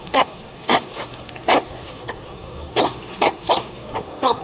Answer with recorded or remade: remade